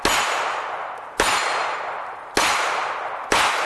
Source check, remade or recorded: recorded